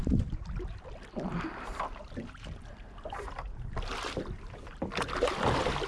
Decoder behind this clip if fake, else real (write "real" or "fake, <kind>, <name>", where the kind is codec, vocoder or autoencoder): real